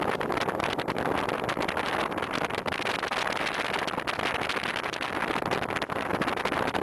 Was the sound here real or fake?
real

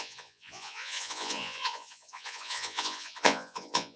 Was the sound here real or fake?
fake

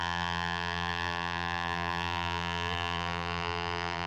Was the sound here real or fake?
fake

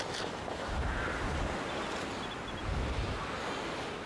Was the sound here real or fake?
real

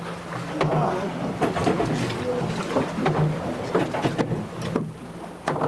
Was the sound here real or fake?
real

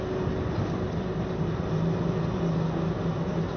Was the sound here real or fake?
real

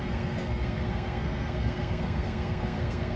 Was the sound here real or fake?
fake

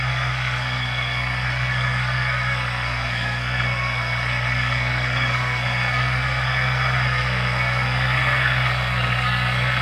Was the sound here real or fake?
fake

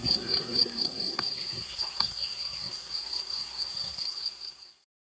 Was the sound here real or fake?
fake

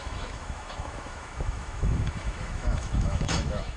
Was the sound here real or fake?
fake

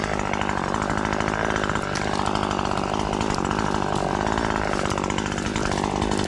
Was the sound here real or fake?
real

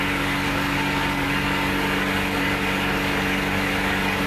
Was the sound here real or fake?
fake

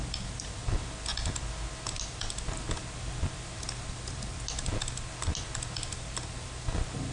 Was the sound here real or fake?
real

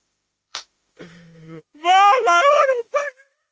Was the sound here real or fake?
fake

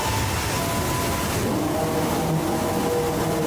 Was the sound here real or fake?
real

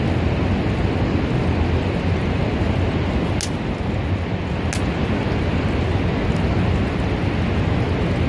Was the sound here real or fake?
real